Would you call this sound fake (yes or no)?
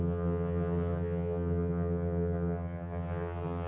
yes